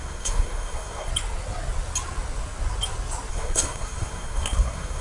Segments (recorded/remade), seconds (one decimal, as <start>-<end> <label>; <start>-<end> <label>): 0.0-1.1 remade; 1.1-3.3 recorded; 3.3-5.0 remade